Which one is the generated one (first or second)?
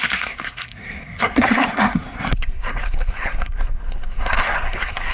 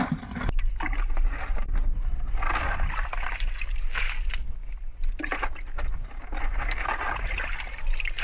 first